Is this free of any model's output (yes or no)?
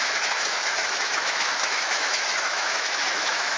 no